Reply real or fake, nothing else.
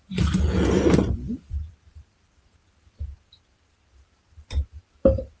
fake